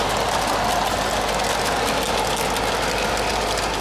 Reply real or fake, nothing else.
real